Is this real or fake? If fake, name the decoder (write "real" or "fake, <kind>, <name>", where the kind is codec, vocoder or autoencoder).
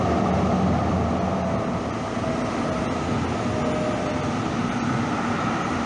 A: real